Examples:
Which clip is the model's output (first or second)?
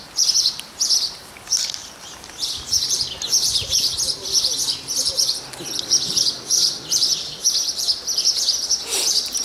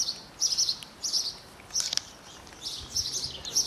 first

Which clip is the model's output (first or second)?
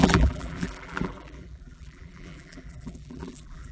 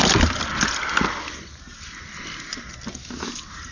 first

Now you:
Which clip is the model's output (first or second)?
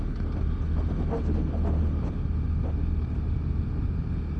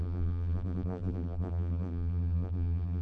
second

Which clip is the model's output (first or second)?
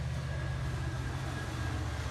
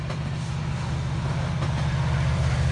second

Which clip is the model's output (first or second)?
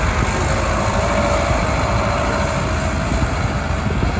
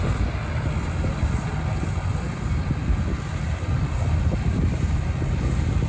second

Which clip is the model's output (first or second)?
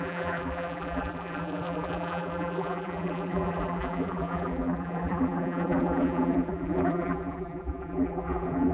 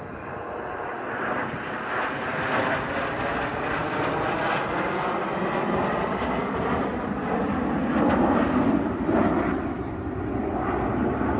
first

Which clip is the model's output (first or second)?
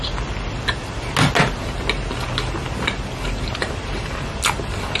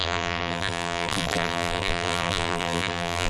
second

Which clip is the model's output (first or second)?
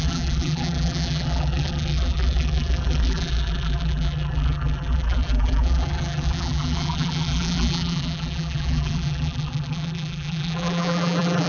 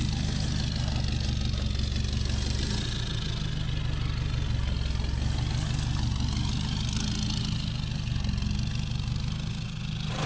first